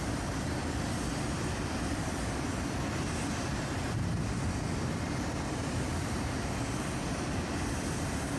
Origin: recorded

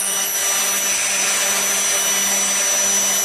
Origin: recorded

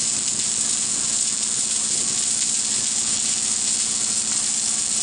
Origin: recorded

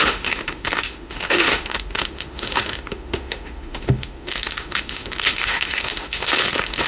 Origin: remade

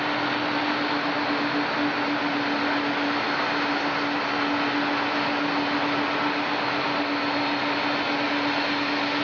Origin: recorded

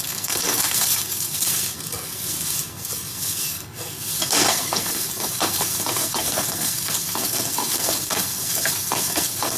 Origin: remade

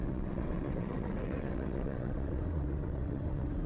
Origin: remade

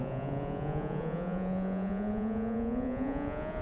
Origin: remade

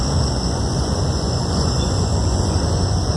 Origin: remade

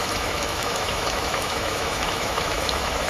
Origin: remade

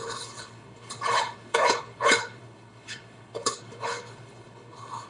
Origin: remade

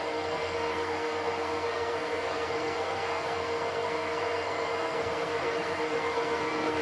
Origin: remade